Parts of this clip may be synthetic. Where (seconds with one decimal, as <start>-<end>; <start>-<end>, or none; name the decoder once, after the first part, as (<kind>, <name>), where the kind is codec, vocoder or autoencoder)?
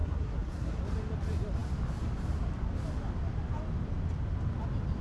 0.0-0.8 (codec, SNAC)